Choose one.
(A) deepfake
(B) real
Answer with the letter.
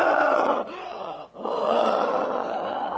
A